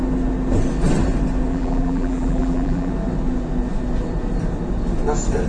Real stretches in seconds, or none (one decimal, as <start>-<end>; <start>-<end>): 0.0-1.5; 2.9-5.5